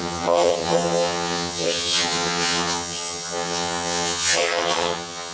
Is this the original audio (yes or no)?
no